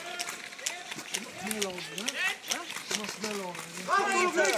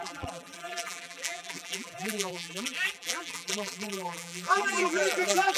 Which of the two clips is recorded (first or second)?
first